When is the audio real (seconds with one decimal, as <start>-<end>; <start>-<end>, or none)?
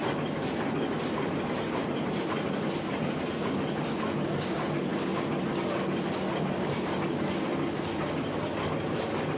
0.0-9.4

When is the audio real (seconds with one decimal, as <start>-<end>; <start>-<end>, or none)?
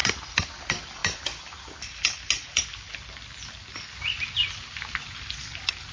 0.5-5.9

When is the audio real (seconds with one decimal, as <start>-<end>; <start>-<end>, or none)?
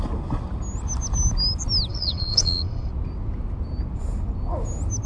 0.0-1.9; 2.9-5.1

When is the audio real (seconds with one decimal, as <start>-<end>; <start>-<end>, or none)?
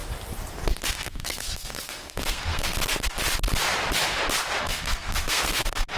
0.0-0.9; 2.8-4.6